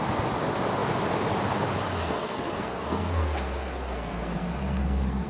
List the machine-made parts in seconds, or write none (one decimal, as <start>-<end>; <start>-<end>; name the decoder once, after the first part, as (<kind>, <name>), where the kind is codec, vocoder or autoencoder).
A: 2.0-5.3 (codec, SNAC)

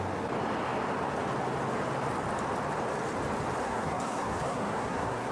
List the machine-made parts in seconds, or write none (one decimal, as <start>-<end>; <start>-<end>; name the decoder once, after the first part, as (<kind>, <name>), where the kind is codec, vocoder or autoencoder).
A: 3.6-5.3 (codec, SNAC)

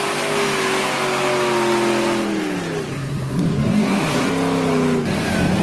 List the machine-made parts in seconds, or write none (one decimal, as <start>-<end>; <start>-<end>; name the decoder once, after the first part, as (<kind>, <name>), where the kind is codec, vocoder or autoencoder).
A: 2.9-4.3 (codec, SNAC)

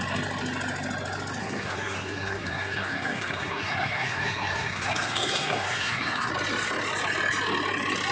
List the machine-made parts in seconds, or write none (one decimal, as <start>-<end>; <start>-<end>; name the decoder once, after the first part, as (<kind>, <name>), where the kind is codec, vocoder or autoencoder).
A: 1.4-6.3 (codec, SNAC)

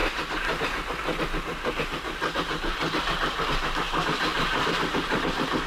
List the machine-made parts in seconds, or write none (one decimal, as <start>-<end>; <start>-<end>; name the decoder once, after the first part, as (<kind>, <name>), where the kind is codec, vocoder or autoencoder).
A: none

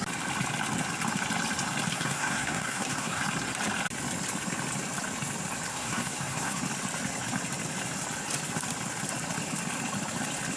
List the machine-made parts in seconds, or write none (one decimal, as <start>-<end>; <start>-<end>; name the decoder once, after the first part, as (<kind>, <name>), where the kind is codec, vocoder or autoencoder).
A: 1.9-3.2 (codec, SNAC); 5.7-6.6